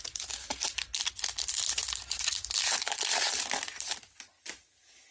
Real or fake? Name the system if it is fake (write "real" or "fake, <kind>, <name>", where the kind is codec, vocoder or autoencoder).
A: real